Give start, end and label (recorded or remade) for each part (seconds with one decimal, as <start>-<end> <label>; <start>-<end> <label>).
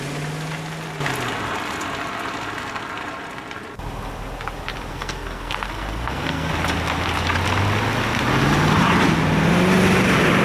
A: 0.0-4.9 recorded; 4.9-6.5 remade; 6.5-10.4 recorded